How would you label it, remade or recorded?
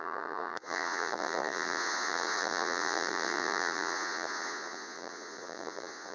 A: remade